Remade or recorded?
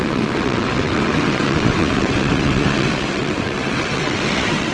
remade